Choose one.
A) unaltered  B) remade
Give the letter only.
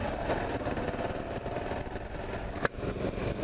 A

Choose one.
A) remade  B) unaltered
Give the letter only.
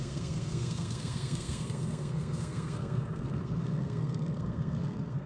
A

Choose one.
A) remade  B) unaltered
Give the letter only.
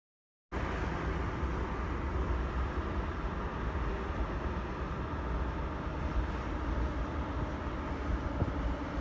B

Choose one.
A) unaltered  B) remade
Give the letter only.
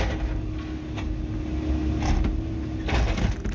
A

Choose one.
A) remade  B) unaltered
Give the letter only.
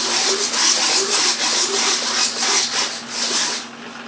B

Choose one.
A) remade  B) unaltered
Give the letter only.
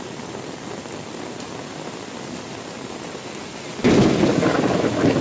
B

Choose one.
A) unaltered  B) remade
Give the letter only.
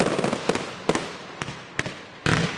A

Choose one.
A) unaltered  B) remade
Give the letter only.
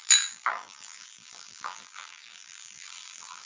B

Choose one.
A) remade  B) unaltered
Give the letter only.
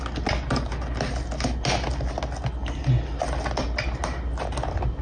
B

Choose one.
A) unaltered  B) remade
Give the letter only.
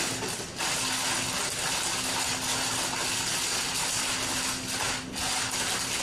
A